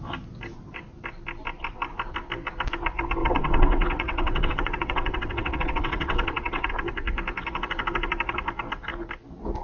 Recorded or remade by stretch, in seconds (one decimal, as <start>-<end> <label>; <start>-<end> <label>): 0.0-3.2 recorded; 3.2-6.7 remade; 6.7-9.6 recorded